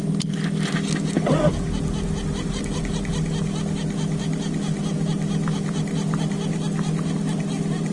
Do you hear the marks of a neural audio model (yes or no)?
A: no